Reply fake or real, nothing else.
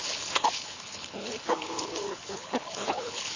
fake